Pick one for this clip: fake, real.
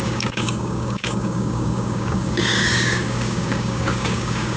fake